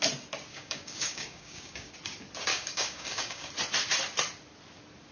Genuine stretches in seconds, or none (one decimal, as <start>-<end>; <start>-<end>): 0.0-0.5; 1.9-2.5; 3.5-5.1